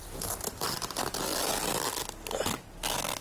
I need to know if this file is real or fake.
real